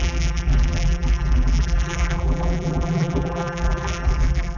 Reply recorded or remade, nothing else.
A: remade